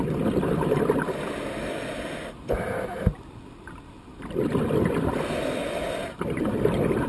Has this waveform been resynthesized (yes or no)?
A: no